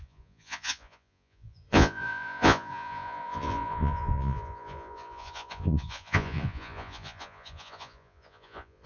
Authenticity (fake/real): fake